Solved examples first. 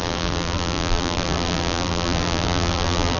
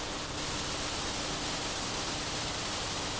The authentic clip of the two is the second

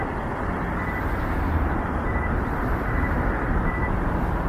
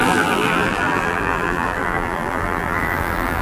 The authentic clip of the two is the first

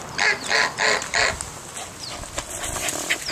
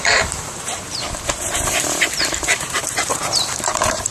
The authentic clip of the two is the first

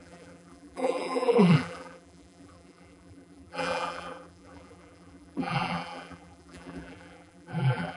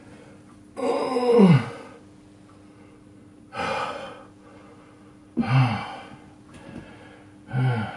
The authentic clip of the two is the second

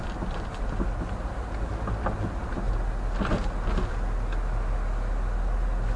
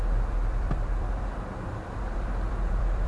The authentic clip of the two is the first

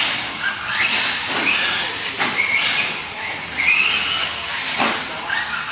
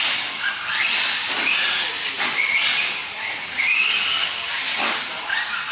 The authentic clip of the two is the first